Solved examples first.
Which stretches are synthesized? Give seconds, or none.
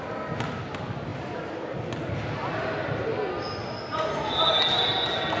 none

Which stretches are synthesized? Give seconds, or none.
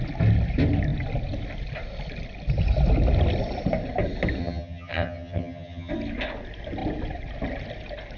4.4-5.9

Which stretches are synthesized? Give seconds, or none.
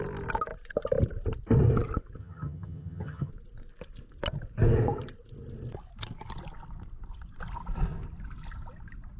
2.2-3.3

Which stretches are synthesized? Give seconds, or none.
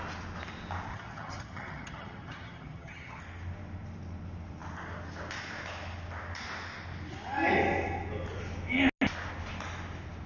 0.9-3.2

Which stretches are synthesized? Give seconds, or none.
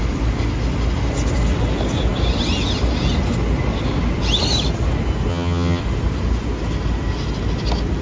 5.3-5.8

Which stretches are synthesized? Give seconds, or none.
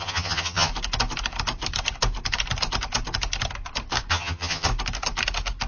0.0-0.7; 4.1-4.7